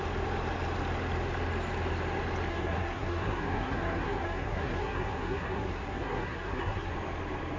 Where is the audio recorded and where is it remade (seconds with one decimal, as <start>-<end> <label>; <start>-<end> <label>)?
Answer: 0.0-2.5 recorded; 2.5-6.9 remade; 6.9-7.6 recorded